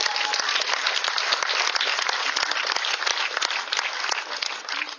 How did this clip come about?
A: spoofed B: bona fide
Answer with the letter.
B